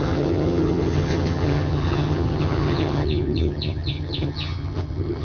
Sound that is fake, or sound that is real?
fake